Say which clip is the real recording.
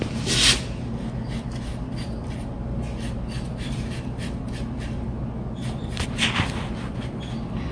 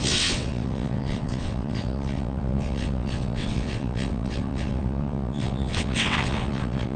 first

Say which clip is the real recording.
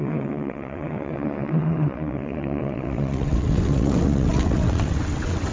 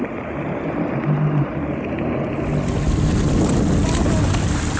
second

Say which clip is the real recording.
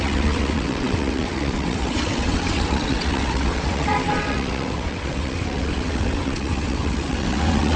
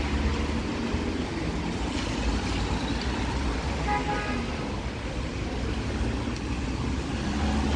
second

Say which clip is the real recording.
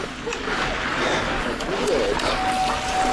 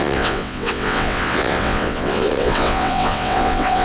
first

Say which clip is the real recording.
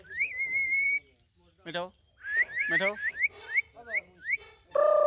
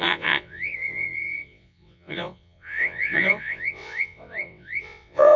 first